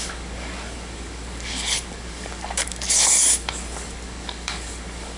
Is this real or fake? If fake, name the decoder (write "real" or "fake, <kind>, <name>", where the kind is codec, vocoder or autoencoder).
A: fake, codec, DAC